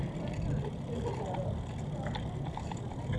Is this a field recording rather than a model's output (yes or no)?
yes